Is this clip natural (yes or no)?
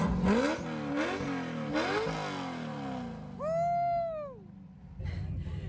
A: yes